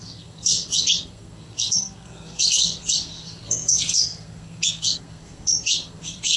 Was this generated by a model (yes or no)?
yes